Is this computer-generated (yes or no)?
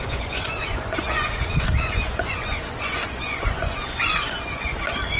yes